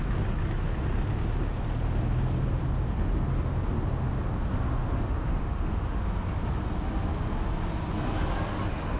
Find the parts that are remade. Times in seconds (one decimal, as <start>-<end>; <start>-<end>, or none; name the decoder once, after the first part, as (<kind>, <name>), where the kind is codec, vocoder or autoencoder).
4.8-6.0 (autoencoder, DAC-VAE)